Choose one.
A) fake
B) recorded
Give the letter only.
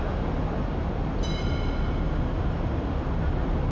B